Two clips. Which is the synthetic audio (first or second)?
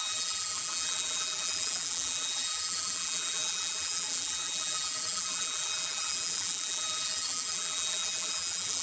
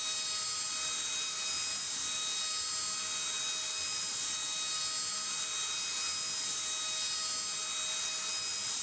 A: first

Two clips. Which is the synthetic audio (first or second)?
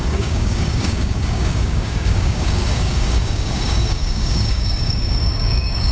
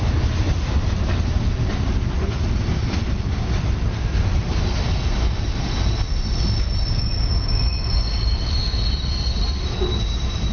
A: first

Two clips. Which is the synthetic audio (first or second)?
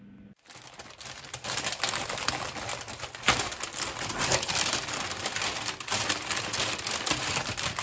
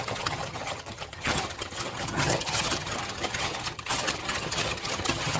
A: second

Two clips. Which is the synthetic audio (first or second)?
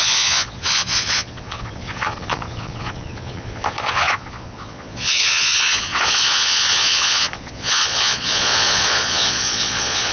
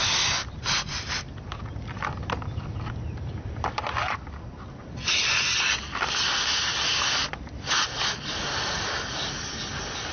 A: first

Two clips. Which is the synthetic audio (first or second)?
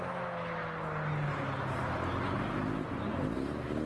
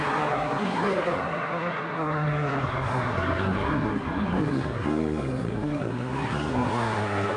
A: second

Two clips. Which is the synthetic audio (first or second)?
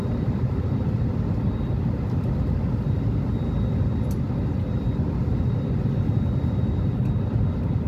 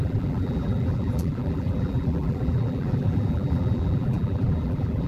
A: second